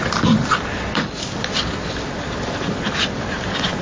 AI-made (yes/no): no